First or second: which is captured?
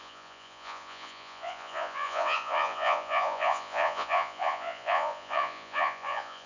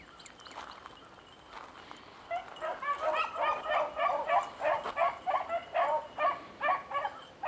second